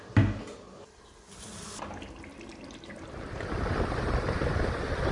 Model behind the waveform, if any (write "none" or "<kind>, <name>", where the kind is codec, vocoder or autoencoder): none